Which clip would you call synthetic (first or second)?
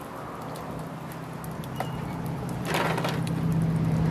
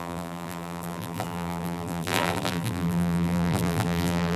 second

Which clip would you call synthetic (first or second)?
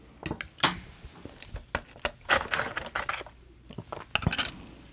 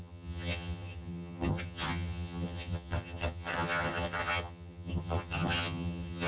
second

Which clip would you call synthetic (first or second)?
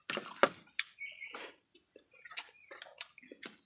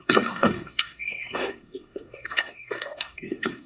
second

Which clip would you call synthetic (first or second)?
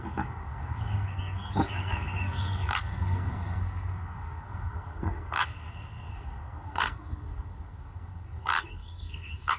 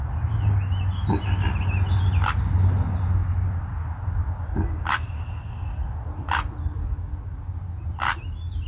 first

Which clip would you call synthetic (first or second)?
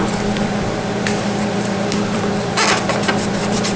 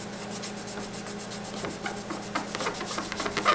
first